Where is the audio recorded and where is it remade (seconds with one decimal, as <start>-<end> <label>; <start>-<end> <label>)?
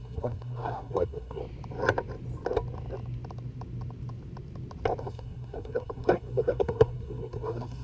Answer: 0.0-1.4 remade; 1.4-5.0 recorded; 5.0-7.8 remade